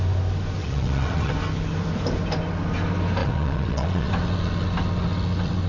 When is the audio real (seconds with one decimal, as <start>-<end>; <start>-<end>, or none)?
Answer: 0.0-0.6; 1.3-3.2; 4.1-5.7